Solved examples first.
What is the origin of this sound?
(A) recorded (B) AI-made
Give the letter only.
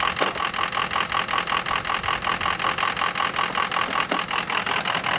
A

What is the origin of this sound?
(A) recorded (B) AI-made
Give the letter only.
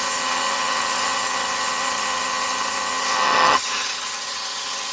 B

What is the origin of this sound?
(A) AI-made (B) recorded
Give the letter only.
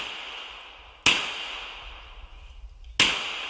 B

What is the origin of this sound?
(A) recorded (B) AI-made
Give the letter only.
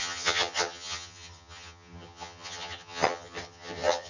B